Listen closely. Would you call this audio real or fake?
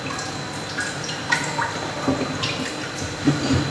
real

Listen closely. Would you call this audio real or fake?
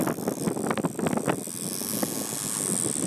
real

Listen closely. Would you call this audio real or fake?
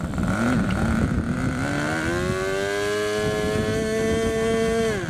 real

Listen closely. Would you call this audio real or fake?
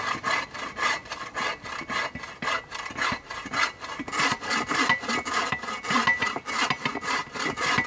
real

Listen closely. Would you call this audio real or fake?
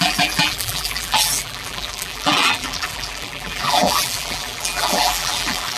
fake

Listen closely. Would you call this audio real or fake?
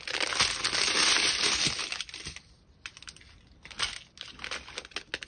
real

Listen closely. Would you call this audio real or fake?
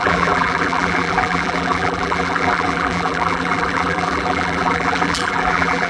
fake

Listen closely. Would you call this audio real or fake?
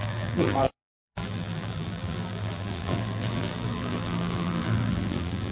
fake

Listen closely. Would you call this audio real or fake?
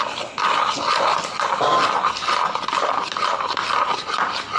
real